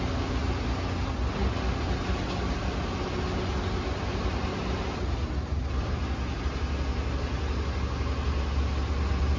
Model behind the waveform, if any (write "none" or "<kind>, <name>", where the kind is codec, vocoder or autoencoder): none